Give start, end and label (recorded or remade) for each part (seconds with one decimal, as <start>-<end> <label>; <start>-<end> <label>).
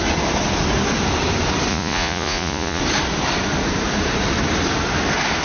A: 0.0-1.7 recorded; 1.7-2.8 remade; 2.8-5.4 recorded